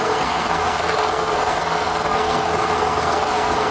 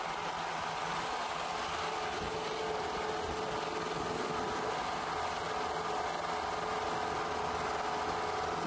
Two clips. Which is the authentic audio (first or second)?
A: second